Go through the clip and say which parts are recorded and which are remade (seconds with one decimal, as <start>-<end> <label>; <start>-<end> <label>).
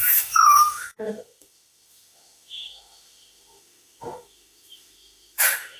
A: 0.0-5.8 remade